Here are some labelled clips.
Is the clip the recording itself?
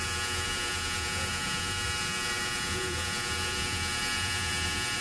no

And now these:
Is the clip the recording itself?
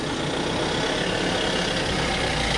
yes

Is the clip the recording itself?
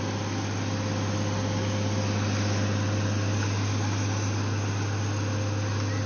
yes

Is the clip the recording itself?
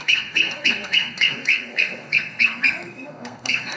no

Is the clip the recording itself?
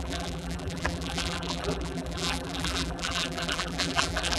no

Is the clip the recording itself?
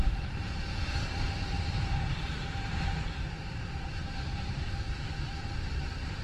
no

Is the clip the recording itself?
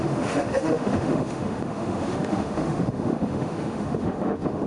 no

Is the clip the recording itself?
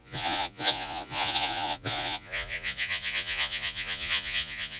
no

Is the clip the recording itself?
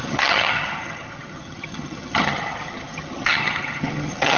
no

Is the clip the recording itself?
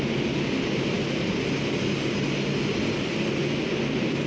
yes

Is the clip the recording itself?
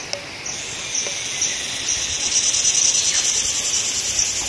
yes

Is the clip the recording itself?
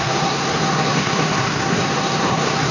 no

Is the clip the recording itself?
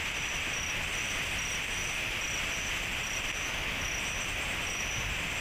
yes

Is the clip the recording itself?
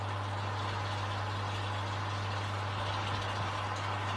yes